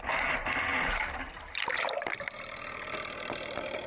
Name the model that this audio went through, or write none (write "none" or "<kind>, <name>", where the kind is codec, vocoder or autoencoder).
none